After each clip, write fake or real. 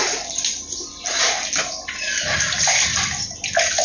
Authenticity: real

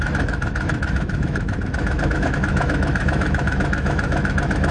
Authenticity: fake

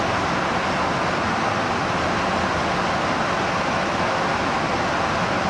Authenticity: real